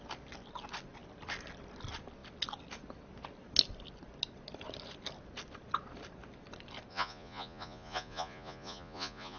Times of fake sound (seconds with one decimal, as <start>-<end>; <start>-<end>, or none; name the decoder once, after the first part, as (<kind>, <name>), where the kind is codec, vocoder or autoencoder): 6.9-9.4 (vocoder, Vocos)